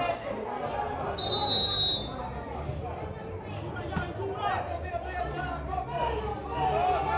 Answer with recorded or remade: recorded